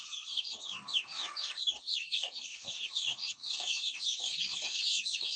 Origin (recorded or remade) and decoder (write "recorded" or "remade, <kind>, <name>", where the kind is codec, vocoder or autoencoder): remade, codec, DAC